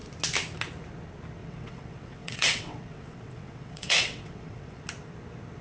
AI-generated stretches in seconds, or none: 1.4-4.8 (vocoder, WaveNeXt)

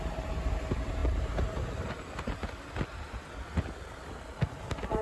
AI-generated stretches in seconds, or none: none

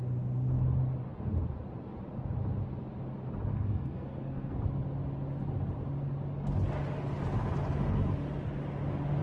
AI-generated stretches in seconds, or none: 3.5-4.6 (codec, SNAC)

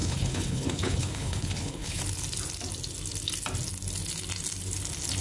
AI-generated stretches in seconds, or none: 0.0-2.0 (codec, HILCodec)

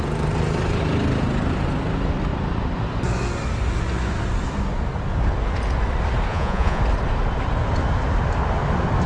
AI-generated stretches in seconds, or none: 6.3-6.8 (vocoder, Vocos)